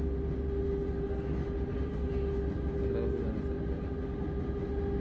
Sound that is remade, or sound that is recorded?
recorded